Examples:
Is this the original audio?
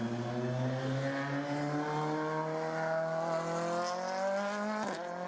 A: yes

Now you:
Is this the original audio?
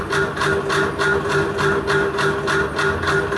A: yes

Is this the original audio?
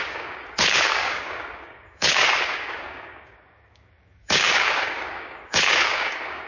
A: no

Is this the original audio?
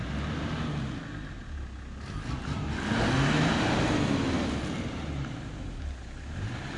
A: yes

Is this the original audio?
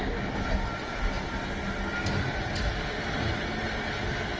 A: yes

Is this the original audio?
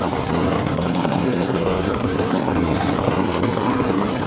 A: no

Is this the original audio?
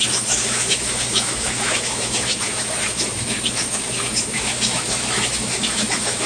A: no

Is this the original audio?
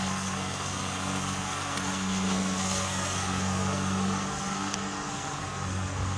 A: no